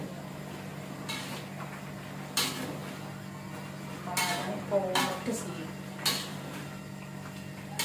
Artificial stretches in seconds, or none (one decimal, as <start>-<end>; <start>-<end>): 6.3-6.8

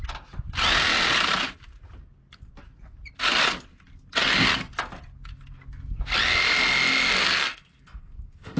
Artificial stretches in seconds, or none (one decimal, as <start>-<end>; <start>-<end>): 7.2-8.6